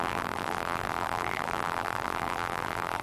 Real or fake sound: fake